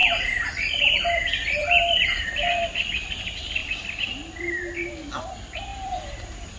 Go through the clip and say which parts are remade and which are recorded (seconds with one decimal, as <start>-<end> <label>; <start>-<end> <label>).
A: 0.0-2.4 remade; 2.4-3.6 recorded; 3.6-5.1 remade; 5.1-5.7 recorded; 5.7-6.6 remade